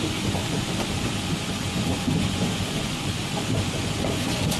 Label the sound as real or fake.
fake